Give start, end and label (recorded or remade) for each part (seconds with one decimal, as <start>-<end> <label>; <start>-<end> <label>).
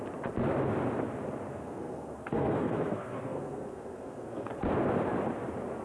0.0-1.5 recorded; 1.5-4.5 remade; 4.5-5.8 recorded